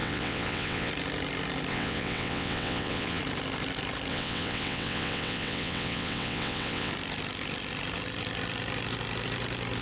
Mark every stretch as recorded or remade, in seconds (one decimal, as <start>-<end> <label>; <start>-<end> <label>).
0.0-0.9 remade; 0.9-1.7 recorded; 1.7-3.2 remade; 3.2-4.1 recorded; 4.1-6.9 remade; 6.9-9.8 recorded